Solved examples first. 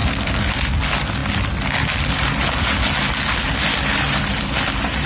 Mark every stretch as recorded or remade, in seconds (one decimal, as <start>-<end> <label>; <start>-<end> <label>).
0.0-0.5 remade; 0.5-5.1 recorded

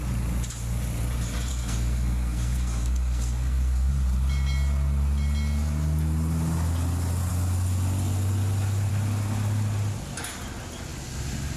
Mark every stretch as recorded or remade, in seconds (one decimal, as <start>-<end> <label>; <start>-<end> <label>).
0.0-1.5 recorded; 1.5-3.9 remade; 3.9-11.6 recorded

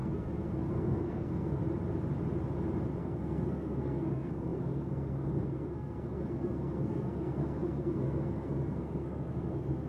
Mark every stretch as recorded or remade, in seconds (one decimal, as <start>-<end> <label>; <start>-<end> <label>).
0.0-1.6 remade; 1.6-3.0 recorded; 3.0-9.9 remade

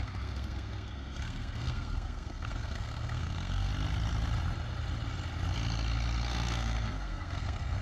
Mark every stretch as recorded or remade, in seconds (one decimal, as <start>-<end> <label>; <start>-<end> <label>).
0.0-3.7 remade; 3.7-6.2 recorded; 6.2-7.8 remade

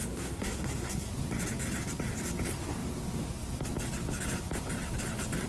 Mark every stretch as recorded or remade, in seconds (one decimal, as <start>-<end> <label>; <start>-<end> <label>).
0.0-1.1 remade; 1.1-5.5 recorded

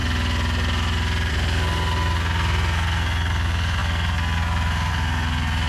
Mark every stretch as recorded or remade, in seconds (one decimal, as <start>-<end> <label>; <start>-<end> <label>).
0.0-1.3 recorded; 1.3-5.7 remade